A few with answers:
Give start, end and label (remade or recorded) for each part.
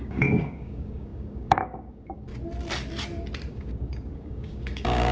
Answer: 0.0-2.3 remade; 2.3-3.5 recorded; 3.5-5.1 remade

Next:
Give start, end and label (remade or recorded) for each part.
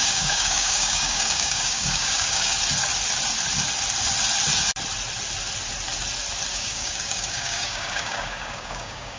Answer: 0.0-2.5 remade; 2.5-6.5 recorded; 6.5-9.2 remade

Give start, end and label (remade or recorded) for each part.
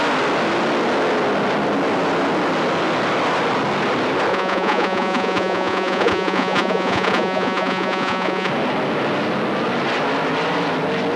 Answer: 0.0-4.3 recorded; 4.3-8.5 remade; 8.5-11.2 recorded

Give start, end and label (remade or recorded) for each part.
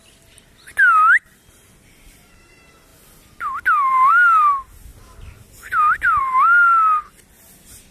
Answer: 0.0-7.9 recorded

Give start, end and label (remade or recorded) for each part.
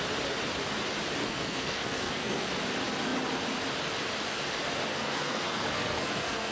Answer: 0.0-1.2 recorded; 1.2-2.5 remade; 2.5-4.9 recorded; 4.9-6.5 remade